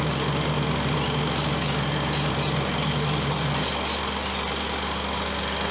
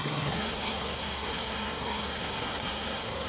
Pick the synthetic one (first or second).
second